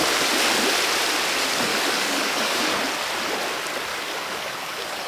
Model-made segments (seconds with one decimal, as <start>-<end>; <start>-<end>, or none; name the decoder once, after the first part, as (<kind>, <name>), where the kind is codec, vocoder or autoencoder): 1.7-2.8 (codec, DAC); 3.9-5.1